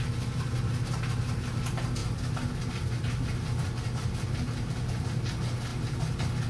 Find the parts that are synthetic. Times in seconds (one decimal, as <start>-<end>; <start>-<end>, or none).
none